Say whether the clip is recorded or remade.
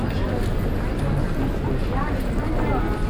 recorded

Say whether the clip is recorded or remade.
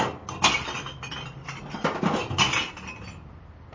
recorded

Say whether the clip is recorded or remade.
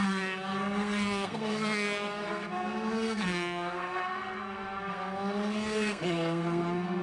remade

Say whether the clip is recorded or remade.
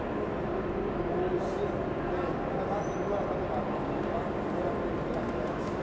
recorded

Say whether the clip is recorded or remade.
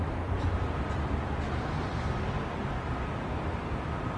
recorded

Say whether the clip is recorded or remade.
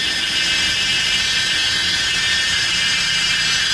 recorded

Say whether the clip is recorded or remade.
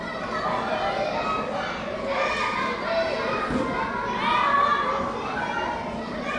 recorded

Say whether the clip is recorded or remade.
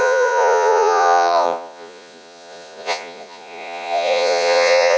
remade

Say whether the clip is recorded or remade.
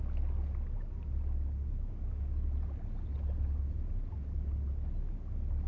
recorded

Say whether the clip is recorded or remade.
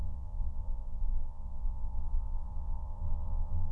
remade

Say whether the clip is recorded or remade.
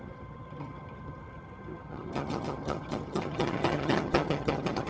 remade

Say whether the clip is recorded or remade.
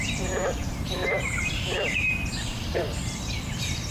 remade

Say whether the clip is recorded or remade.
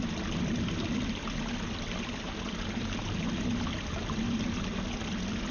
recorded